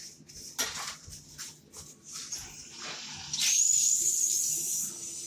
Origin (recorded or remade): recorded